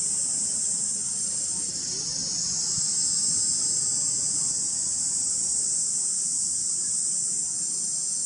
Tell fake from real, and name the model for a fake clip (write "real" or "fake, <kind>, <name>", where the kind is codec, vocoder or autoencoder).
real